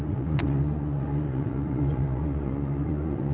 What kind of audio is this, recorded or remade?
remade